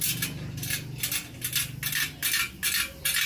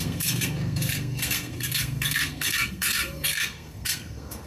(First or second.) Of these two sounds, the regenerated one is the second